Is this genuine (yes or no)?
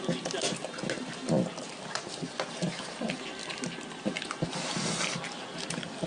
yes